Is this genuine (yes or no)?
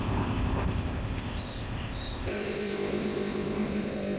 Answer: no